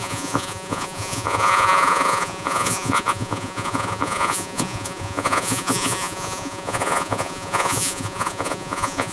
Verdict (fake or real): fake